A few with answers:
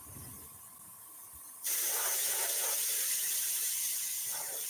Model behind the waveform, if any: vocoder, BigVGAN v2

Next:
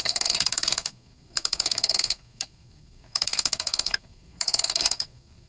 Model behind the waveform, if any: codec, SNAC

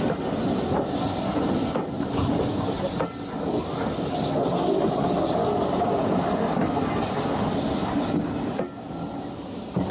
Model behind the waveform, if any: none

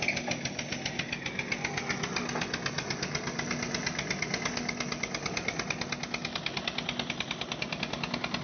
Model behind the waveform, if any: none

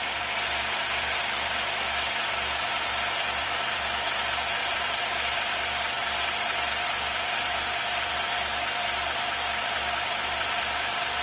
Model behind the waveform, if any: vocoder, BigVGAN v2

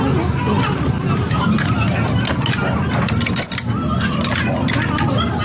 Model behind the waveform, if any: none